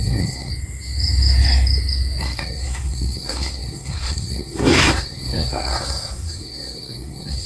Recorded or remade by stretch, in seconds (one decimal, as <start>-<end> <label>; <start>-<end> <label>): 0.0-0.5 remade; 0.5-2.2 recorded; 2.2-7.5 remade